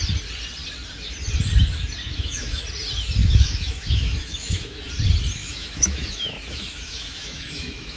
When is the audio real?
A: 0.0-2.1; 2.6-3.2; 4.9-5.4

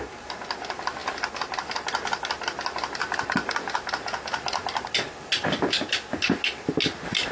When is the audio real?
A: 0.0-7.3

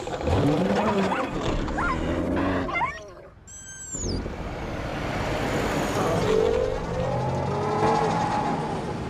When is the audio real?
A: 1.9-4.3; 4.9-8.1